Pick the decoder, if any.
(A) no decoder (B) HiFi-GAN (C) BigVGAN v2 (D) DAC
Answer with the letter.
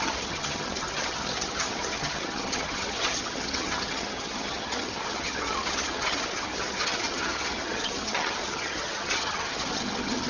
B